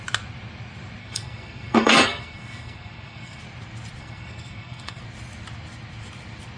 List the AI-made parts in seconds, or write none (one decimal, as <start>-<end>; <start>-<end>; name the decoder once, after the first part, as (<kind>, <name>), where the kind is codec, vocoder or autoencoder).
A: 1.0-3.4 (codec, SNAC); 4.0-5.0